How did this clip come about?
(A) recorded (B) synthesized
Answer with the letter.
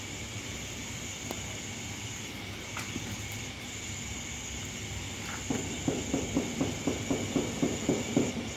A